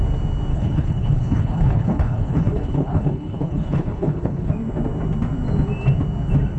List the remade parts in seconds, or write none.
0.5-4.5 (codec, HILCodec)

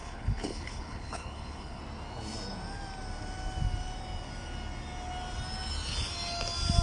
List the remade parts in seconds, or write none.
0.0-1.8 (codec, HILCodec)

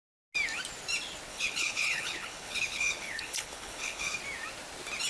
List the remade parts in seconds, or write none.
1.3-4.2 (codec, HILCodec)

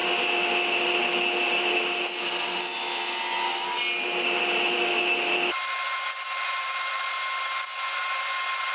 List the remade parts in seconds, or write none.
none

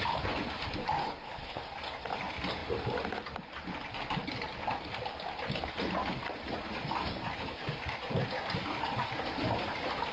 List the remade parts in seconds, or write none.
1.0-1.6 (codec, HILCodec)